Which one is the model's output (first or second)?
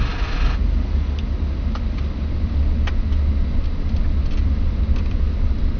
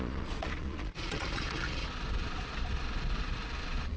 second